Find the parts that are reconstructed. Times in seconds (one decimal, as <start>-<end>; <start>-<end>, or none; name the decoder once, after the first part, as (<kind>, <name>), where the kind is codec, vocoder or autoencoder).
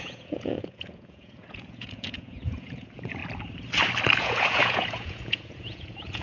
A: 0.0-3.2 (vocoder, Vocos); 4.2-6.2